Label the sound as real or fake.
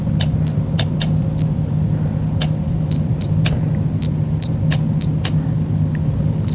real